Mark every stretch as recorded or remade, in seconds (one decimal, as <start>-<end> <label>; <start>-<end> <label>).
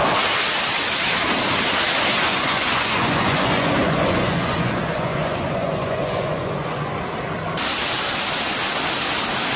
0.0-2.3 recorded; 2.3-6.9 remade; 6.9-9.6 recorded